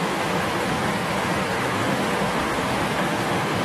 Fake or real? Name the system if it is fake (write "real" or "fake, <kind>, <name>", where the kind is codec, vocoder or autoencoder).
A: fake, autoencoder, DAC-VAE